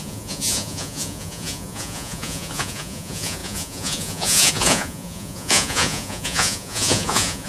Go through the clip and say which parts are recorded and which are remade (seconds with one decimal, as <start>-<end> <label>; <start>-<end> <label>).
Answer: 0.0-7.5 remade